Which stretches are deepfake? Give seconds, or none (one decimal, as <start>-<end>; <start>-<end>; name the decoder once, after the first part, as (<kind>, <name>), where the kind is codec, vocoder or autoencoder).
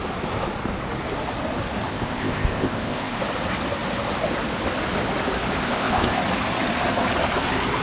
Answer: 1.9-3.2 (codec, ZipCodec); 5.6-6.2